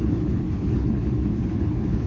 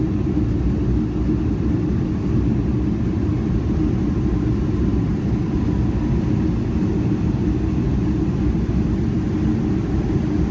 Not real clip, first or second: first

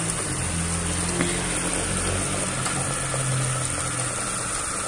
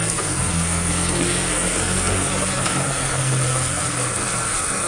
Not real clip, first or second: second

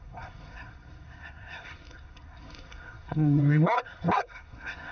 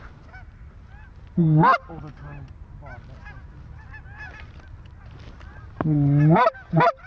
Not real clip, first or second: first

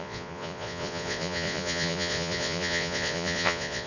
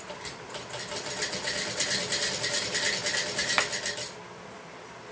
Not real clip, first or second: first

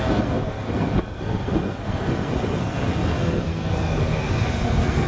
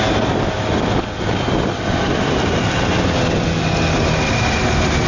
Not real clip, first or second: first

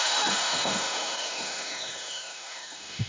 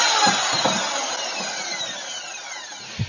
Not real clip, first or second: first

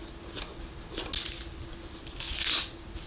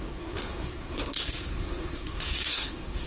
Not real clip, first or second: second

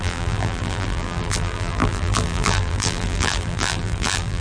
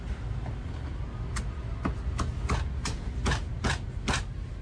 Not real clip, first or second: first